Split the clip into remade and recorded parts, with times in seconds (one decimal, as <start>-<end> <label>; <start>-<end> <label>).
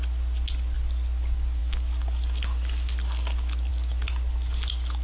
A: 0.0-5.0 recorded